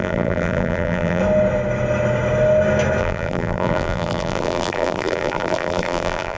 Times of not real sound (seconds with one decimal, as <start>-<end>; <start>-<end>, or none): 0.0-1.2; 3.0-6.4